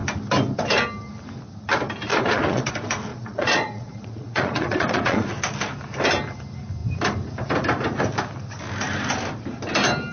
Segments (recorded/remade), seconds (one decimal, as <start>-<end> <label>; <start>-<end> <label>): 0.0-2.1 recorded; 2.1-2.7 remade; 2.7-3.1 recorded; 3.1-5.3 remade; 5.3-10.1 recorded